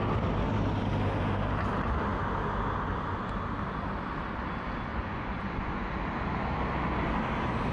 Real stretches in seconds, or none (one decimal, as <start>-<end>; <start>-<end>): 0.0-4.9; 5.9-7.7